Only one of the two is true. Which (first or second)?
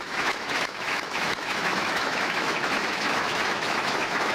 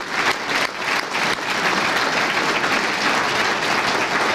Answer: second